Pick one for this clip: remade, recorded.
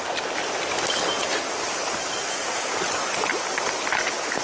recorded